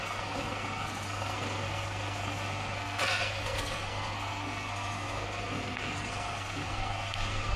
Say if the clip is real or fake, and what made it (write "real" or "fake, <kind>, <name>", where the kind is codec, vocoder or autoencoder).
fake, codec, SNAC